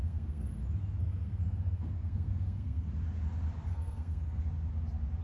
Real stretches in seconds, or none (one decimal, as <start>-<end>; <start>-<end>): 0.5-1.0; 2.9-3.7; 4.4-5.2